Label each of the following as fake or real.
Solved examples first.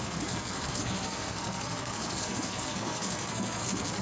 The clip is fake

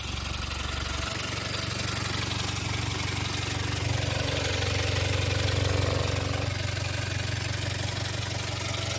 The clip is real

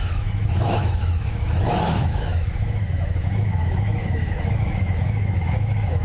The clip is fake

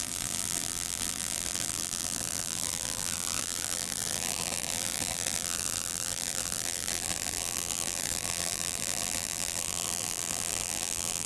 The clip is fake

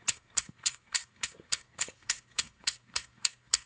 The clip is fake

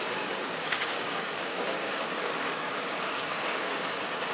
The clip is fake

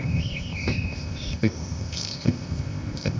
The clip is fake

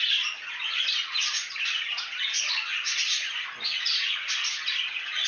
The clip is real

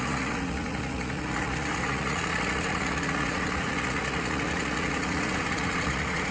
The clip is fake